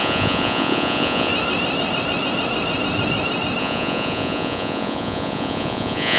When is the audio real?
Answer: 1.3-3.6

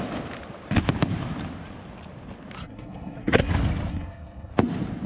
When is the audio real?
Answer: 0.0-2.6; 3.5-3.9; 4.5-5.1

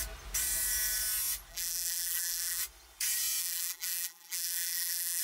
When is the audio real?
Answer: 0.0-1.5; 2.6-3.4